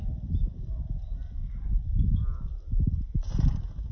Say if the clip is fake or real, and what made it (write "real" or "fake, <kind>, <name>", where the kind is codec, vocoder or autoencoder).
real